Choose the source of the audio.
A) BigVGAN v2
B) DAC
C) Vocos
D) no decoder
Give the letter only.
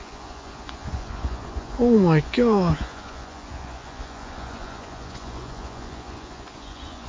C